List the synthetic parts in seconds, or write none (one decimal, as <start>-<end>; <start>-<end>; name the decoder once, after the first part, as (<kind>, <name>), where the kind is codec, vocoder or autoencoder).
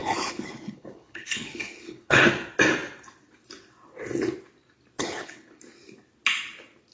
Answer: 0.0-2.3 (codec, HILCodec); 5.0-5.6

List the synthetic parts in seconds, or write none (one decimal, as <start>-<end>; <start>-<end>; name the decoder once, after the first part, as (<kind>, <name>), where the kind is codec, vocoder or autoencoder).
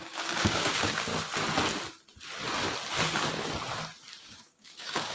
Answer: 0.0-1.1 (codec, DAC); 4.2-5.1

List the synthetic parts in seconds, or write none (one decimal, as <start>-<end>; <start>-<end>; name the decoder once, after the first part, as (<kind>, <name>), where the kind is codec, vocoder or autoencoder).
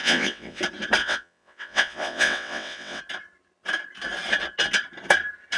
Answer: 0.0-0.6 (vocoder, WaveNeXt); 1.0-3.0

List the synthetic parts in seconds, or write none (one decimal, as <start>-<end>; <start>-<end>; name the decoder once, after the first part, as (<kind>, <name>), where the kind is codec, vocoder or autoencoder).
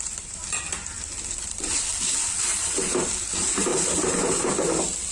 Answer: 2.5-3.1 (vocoder, BigVGAN v2); 3.7-4.5